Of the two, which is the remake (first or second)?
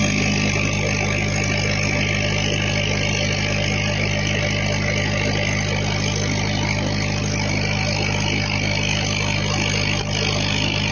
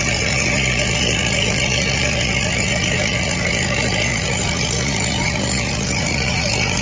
second